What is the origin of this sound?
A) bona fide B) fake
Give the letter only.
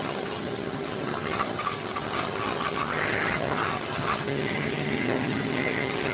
B